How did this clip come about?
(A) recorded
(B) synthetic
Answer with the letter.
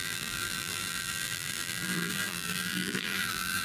B